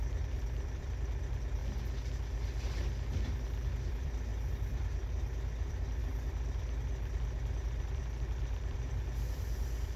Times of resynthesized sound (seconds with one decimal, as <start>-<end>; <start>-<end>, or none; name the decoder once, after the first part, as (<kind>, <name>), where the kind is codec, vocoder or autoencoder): 0.0-1.6 (vocoder, BigVGAN v2); 3.9-10.0